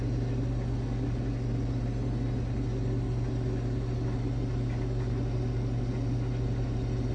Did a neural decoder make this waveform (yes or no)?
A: no